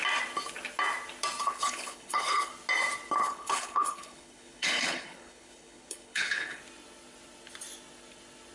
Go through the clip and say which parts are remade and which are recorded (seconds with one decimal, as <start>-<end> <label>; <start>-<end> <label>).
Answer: 0.0-1.4 recorded; 1.4-2.5 remade; 2.5-3.2 recorded; 3.2-6.6 remade; 6.6-8.5 recorded